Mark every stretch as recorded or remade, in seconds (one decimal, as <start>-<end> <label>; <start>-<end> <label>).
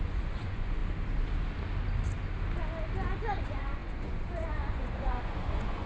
0.0-0.8 remade; 0.8-3.4 recorded; 3.4-5.9 remade